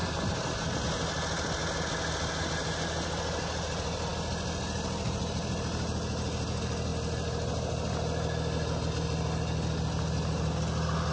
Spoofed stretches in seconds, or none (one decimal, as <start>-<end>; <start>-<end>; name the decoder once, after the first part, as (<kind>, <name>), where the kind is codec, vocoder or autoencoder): none